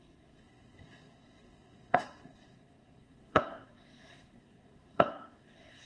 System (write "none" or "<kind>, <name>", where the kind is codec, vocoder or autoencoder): codec, SNAC